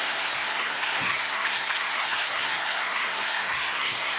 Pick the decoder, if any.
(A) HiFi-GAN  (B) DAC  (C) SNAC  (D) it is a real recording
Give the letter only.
C